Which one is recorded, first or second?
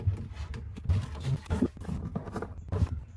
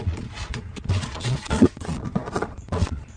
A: first